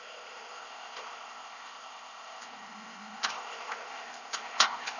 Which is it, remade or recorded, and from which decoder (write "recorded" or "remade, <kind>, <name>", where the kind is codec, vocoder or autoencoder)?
remade, codec, ZipCodec